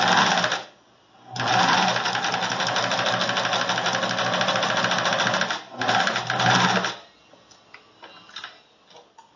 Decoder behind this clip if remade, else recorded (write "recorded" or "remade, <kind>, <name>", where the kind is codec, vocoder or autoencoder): recorded